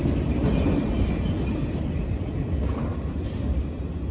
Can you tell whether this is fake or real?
real